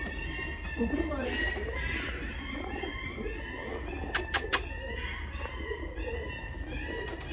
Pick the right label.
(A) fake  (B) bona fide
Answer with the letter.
B